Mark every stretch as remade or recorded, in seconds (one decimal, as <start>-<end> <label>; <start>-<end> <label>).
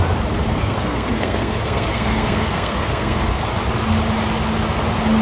0.0-0.4 recorded; 0.4-3.5 remade; 3.5-5.2 recorded